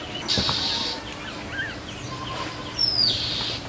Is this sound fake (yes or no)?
no